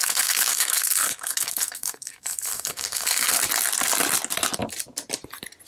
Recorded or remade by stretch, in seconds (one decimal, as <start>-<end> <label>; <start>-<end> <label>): 0.0-3.4 remade; 3.4-5.7 recorded